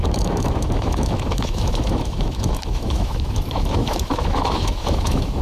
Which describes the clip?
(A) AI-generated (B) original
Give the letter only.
A